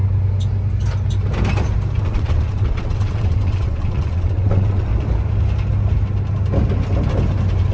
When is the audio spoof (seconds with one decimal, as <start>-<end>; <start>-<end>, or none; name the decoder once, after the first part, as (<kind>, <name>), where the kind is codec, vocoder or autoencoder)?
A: 2.0-4.9 (vocoder, WaveNeXt)

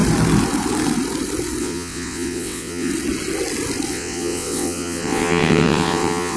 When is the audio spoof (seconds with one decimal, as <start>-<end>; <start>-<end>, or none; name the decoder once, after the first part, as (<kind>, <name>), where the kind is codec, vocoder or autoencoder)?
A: 1.6-2.9 (vocoder, WaveNeXt); 3.9-6.4

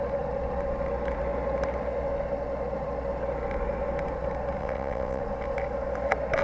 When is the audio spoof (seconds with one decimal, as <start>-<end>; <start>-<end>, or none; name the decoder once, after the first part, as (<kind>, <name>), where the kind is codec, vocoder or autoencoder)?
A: 4.6-5.2 (vocoder, WaveNeXt)

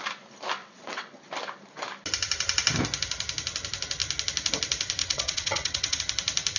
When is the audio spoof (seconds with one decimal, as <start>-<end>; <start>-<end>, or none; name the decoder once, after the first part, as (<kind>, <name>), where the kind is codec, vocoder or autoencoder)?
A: 0.6-1.2 (vocoder, WaveNeXt); 5.0-6.0

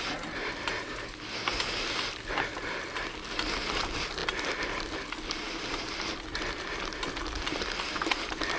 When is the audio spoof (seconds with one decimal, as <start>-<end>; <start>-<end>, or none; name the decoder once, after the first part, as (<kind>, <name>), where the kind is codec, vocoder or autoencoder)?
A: none